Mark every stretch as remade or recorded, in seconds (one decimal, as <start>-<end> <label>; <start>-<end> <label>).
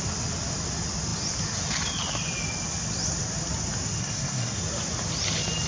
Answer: 0.0-4.0 recorded; 4.0-4.6 remade; 4.6-5.7 recorded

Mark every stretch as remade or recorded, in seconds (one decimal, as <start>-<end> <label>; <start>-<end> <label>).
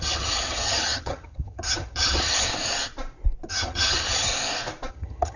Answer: 0.0-2.5 remade; 2.5-3.5 recorded; 3.5-4.3 remade; 4.3-4.9 recorded; 4.9-5.4 remade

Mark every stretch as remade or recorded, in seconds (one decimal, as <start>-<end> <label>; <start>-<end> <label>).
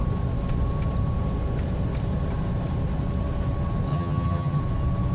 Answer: 0.0-3.9 recorded; 3.9-4.6 remade; 4.6-5.1 recorded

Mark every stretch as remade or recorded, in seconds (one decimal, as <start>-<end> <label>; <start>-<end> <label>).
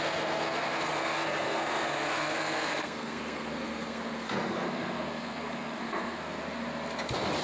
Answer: 0.0-6.4 remade; 6.4-7.4 recorded